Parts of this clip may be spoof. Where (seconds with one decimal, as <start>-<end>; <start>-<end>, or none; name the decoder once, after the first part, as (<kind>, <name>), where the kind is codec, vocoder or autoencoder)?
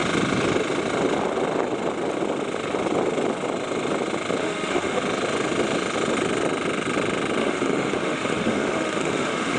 4.4-5.0 (autoencoder, DAC-VAE); 7.4-9.6